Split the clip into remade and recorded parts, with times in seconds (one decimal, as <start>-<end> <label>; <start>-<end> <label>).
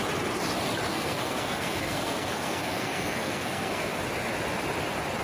0.0-0.9 recorded; 0.9-4.0 remade; 4.0-5.2 recorded